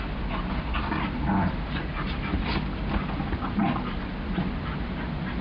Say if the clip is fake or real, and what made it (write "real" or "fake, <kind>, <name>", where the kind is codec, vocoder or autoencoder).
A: real